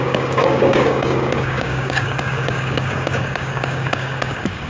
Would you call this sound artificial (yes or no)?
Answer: yes